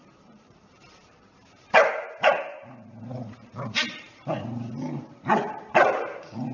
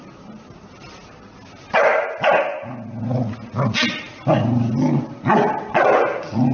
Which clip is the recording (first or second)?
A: second